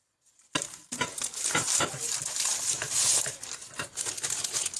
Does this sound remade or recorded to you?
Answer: recorded